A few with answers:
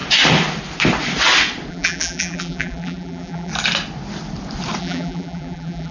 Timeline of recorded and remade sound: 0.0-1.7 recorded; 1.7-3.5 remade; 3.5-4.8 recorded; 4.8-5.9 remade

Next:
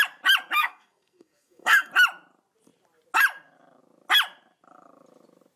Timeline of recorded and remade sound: 0.0-0.6 recorded; 0.6-1.9 remade; 1.9-5.6 recorded

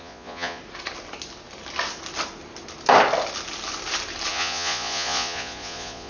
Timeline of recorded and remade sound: 0.0-0.6 remade; 0.6-4.3 recorded; 4.3-6.1 remade

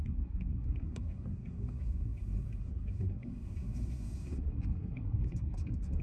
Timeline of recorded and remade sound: 0.0-6.0 remade

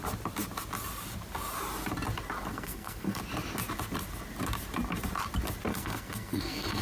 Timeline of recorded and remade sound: 0.0-2.5 recorded; 2.5-3.2 remade; 3.2-5.7 recorded; 5.7-6.8 remade